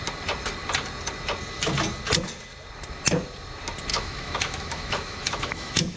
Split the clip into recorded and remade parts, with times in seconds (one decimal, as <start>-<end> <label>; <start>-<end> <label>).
0.0-3.9 recorded; 3.9-6.0 remade